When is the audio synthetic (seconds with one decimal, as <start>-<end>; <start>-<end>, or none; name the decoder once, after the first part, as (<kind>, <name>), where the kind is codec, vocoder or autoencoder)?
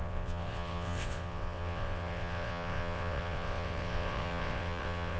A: 0.0-5.2 (vocoder, WaveNeXt)